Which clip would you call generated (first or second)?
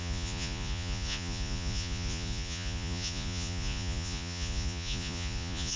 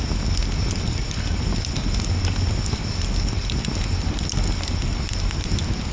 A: first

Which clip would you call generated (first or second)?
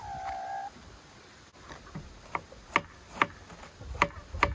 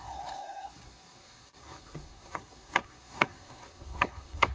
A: second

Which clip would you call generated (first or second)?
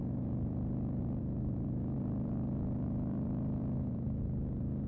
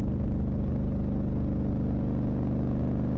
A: first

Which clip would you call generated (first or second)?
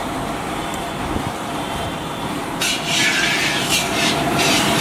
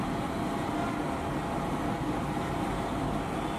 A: first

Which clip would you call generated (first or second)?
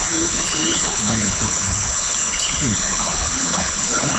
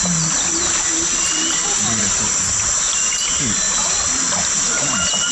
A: first